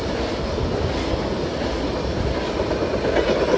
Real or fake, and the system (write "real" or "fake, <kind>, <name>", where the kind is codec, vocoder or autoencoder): real